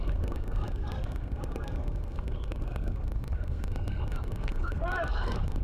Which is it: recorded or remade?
remade